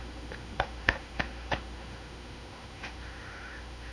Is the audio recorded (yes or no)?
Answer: no